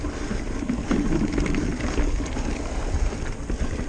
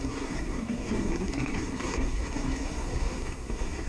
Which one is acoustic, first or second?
first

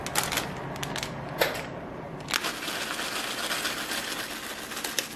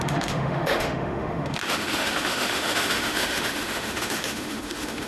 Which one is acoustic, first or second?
first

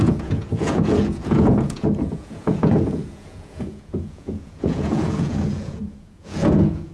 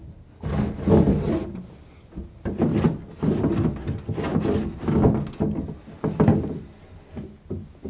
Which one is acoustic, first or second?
second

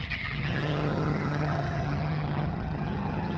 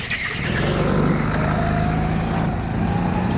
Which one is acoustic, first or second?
second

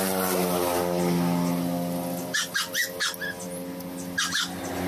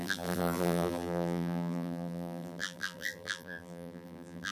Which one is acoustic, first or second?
first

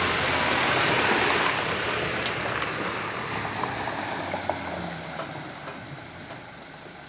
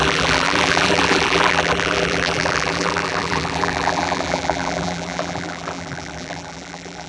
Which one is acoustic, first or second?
first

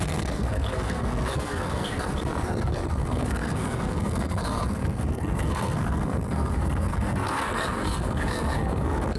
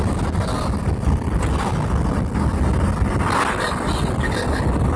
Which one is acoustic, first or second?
second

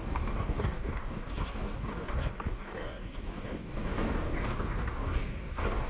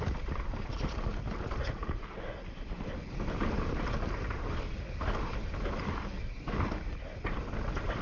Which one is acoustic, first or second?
second